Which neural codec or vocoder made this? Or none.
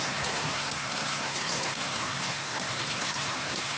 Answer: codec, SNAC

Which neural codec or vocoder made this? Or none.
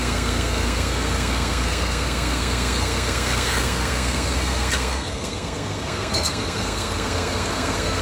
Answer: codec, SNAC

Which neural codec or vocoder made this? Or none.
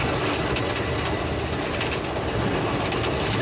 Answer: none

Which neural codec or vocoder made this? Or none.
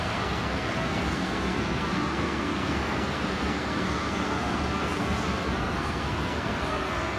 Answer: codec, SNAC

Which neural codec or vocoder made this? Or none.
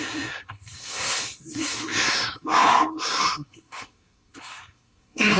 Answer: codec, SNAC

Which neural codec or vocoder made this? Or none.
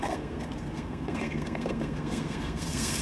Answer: codec, SNAC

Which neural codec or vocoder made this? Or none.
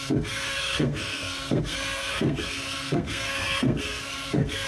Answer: codec, SNAC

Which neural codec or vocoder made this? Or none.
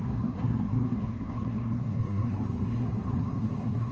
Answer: codec, SNAC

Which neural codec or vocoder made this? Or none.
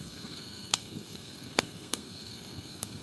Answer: codec, SNAC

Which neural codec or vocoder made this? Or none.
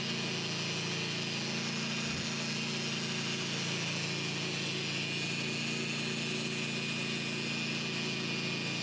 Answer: none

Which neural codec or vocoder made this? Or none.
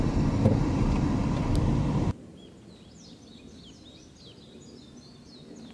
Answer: none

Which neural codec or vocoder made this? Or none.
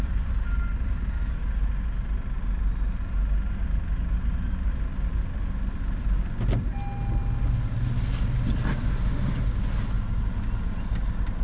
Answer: none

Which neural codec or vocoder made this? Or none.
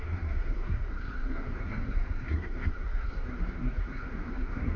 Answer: codec, SNAC